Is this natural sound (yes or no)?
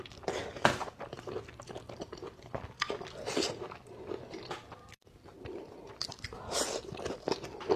yes